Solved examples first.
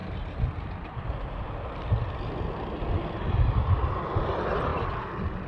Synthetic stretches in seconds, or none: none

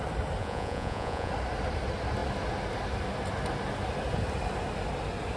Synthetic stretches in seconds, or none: 0.4-1.3

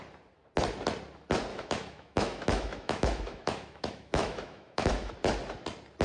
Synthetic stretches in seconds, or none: 1.5-5.1

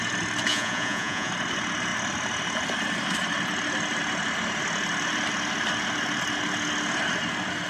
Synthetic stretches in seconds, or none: 0.5-1.3

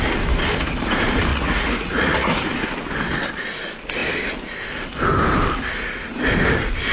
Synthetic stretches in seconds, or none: 1.3-2.3